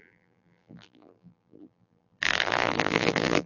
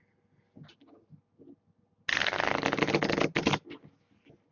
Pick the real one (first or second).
second